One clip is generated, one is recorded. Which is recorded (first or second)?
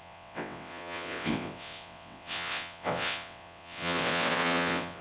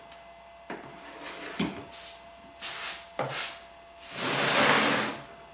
second